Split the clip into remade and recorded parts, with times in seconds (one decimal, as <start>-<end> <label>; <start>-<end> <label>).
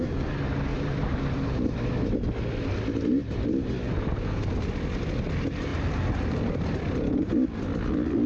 0.0-0.7 recorded; 0.7-1.7 remade; 1.7-5.7 recorded; 5.7-7.3 remade; 7.3-8.3 recorded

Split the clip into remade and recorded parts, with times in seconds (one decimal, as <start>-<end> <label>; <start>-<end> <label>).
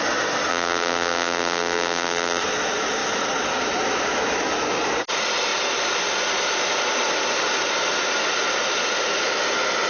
0.0-0.5 recorded; 0.5-2.4 remade; 2.4-9.9 recorded